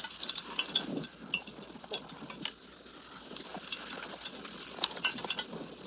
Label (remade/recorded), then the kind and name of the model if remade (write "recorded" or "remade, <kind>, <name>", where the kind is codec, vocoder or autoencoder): recorded